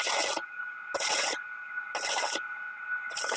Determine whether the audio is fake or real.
real